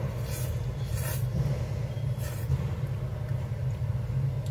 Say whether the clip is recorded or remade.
recorded